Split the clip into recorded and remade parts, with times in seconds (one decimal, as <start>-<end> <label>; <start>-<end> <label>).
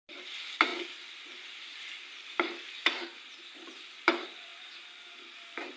0.0-5.8 recorded